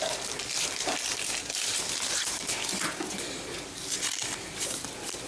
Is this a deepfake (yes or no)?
yes